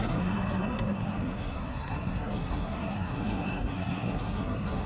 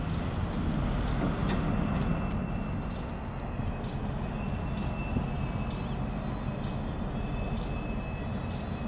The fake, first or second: first